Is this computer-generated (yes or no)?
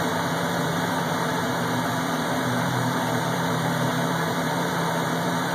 yes